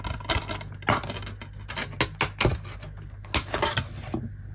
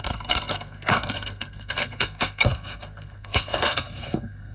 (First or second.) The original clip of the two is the first